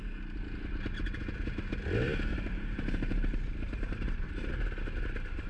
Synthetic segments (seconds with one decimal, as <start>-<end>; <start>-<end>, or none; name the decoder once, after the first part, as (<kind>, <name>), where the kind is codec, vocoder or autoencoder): 2.3-4.5 (vocoder, BigVGAN v2)